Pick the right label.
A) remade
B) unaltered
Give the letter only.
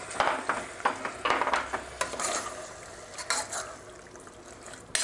B